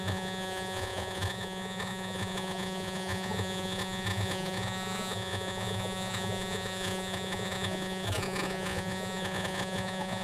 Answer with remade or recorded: remade